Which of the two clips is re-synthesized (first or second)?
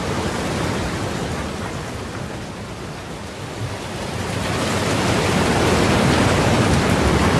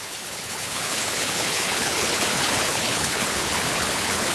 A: second